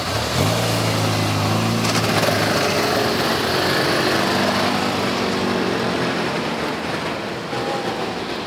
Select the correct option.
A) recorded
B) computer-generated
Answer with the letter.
A